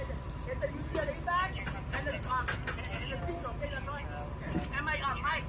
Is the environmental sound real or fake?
real